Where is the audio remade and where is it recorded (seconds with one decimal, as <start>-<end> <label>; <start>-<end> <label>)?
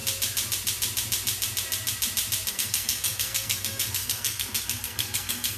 0.0-2.5 recorded; 2.5-5.6 remade